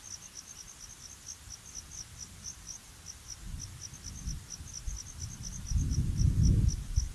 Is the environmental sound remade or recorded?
recorded